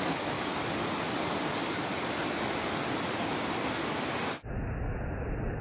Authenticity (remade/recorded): recorded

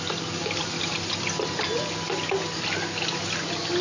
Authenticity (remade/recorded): recorded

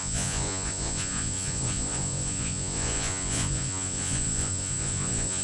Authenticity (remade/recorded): remade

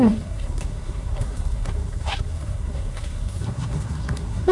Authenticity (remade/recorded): remade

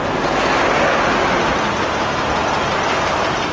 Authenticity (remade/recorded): recorded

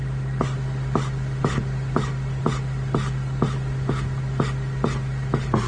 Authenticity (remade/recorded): recorded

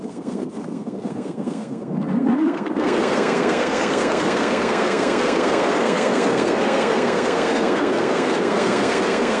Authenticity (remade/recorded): remade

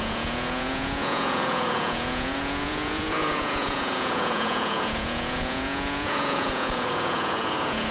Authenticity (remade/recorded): remade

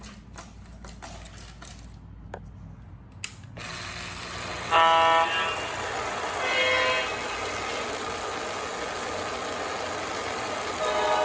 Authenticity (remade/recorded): recorded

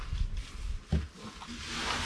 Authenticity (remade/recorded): recorded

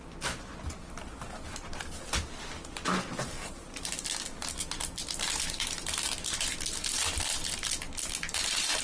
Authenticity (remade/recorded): recorded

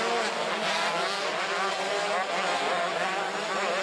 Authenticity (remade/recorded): recorded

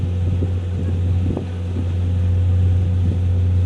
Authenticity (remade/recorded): recorded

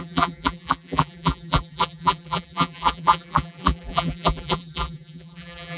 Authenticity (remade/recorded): remade